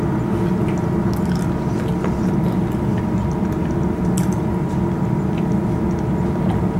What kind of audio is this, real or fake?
real